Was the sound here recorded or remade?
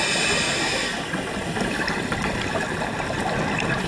recorded